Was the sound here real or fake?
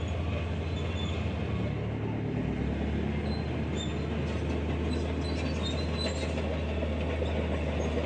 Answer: real